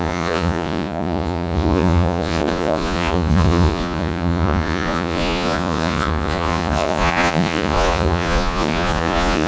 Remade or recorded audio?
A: remade